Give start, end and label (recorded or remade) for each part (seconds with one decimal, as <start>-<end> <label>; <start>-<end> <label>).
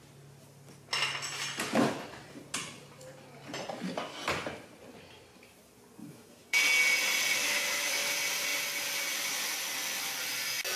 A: 0.0-6.0 recorded; 6.0-6.6 remade; 6.6-7.4 recorded; 7.4-8.1 remade; 8.1-10.8 recorded